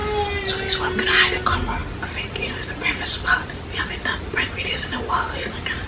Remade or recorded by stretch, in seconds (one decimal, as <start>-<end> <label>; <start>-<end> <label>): 0.0-5.9 recorded

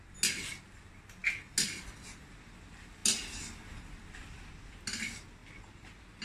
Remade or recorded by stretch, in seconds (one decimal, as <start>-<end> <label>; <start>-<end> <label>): 0.0-6.2 recorded

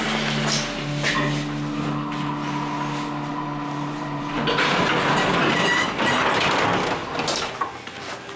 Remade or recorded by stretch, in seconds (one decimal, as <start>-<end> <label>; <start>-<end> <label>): 0.0-3.3 recorded; 3.3-4.8 remade; 4.8-7.0 recorded; 7.0-7.5 remade; 7.5-8.4 recorded

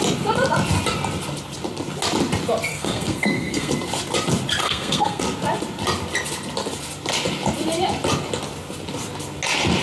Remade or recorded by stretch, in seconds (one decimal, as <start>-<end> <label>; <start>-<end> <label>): 0.0-2.7 recorded; 2.7-3.7 remade; 3.7-4.6 recorded; 4.6-5.2 remade; 5.2-9.8 recorded

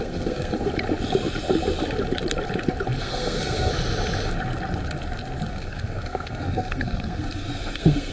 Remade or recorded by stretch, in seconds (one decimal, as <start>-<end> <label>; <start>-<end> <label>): 0.0-0.7 remade; 0.7-3.0 recorded; 3.0-3.7 remade; 3.7-5.5 recorded; 5.5-8.1 remade

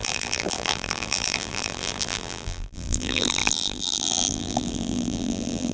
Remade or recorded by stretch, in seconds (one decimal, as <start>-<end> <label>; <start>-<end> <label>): 0.0-5.7 remade

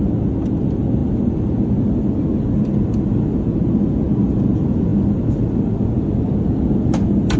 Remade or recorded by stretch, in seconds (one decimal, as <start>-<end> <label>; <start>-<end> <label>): 0.0-7.4 recorded

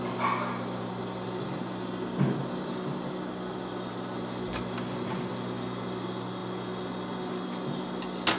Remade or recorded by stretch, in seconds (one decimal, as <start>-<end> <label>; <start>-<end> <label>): 0.0-8.4 recorded